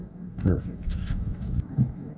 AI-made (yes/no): yes